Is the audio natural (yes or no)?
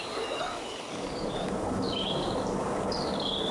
no